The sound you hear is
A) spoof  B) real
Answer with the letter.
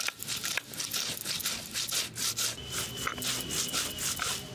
B